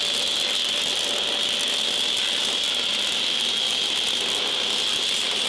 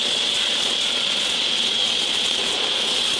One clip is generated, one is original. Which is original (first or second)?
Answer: first